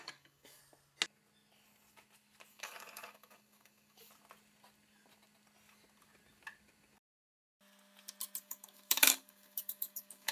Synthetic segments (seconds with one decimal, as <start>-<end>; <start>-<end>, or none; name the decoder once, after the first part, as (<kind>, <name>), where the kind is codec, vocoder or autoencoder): 0.0-0.6 (codec, DAC); 2.5-4.1; 8.4-10.3